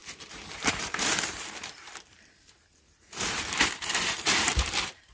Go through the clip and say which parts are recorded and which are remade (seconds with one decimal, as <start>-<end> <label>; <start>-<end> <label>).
0.0-5.1 remade